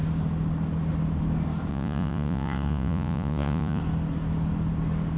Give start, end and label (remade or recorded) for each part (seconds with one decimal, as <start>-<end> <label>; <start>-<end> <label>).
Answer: 0.0-1.7 recorded; 1.7-3.8 remade; 3.8-5.2 recorded